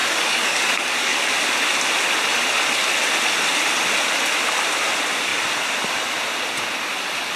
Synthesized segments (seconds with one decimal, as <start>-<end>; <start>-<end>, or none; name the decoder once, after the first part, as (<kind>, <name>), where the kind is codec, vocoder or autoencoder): 0.0-1.3 (codec, DAC)